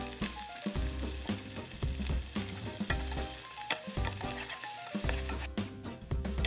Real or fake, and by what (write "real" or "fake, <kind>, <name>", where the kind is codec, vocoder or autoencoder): real